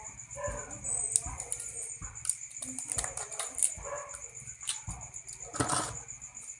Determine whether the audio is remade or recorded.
recorded